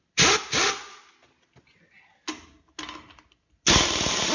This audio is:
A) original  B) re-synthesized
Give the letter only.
A